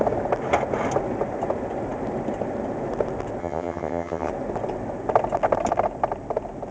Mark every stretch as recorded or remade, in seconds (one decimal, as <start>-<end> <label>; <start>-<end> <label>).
0.0-3.4 recorded; 3.4-4.3 remade; 4.3-6.7 recorded

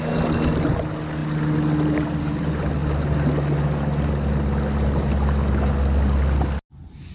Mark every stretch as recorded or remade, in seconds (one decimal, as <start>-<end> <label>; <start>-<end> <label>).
0.0-7.1 recorded

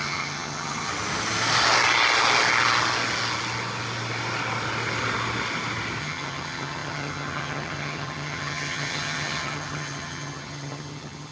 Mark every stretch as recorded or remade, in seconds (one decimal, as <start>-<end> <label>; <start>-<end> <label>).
0.0-0.9 remade; 0.9-6.0 recorded; 6.0-11.3 remade

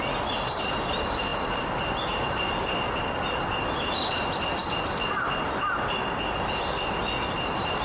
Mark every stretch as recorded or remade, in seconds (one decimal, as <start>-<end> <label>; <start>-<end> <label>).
0.0-7.8 recorded